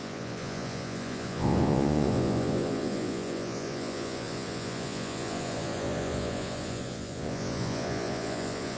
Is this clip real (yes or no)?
no